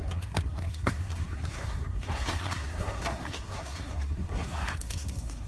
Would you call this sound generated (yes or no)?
yes